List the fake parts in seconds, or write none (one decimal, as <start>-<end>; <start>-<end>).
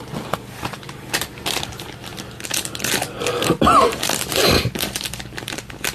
2.1-5.4